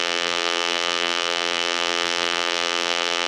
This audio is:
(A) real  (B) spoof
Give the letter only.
B